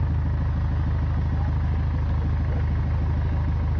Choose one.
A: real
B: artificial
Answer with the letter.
A